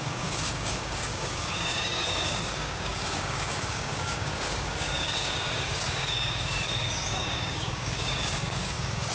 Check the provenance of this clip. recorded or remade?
remade